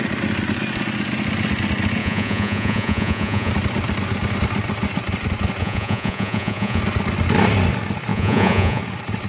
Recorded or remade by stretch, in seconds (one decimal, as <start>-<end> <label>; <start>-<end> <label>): 0.0-2.0 recorded; 2.0-3.5 remade; 3.5-5.6 recorded; 5.6-6.8 remade; 6.8-8.1 recorded; 8.1-8.8 remade; 8.8-9.3 recorded